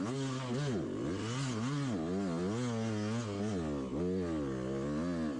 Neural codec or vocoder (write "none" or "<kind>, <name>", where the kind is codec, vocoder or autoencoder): none